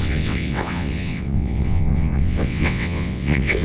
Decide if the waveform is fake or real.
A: fake